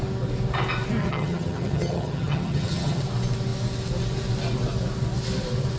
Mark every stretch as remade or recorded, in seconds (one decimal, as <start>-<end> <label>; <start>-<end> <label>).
0.0-1.0 recorded; 1.0-3.0 remade; 3.0-5.8 recorded